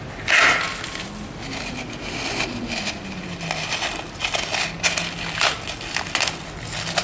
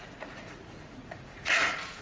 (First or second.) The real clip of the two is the first